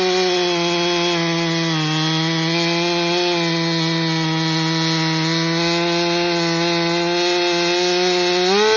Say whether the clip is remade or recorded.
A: recorded